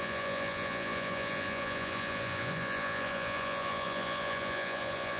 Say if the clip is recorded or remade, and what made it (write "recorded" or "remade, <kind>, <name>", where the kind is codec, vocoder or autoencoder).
remade, vocoder, Vocos